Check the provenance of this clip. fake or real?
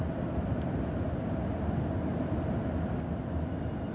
real